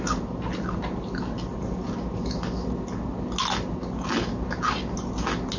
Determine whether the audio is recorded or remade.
recorded